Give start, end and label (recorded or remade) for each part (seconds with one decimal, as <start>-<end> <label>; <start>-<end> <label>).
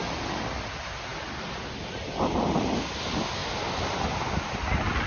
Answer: 0.0-5.1 recorded